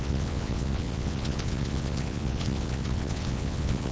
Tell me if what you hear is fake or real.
fake